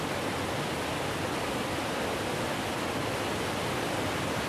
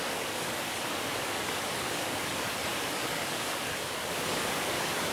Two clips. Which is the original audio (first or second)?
first